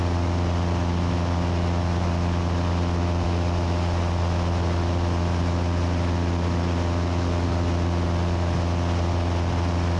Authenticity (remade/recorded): recorded